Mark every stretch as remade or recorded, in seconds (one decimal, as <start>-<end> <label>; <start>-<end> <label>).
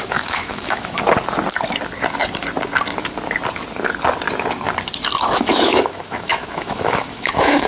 0.0-1.0 remade; 1.0-5.2 recorded; 5.2-7.7 remade